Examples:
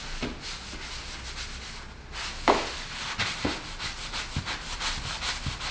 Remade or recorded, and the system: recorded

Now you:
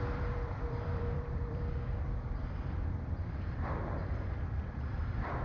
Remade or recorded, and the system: remade, vocoder, BigVGAN v2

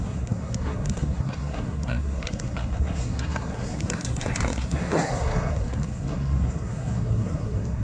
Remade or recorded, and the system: remade, codec, SNAC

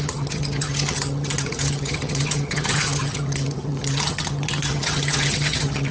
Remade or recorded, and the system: remade, vocoder, HiFi-GAN